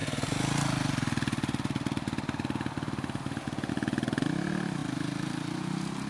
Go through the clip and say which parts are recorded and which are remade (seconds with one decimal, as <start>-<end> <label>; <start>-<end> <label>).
0.0-6.1 recorded